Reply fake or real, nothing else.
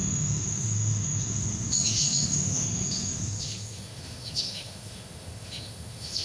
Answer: fake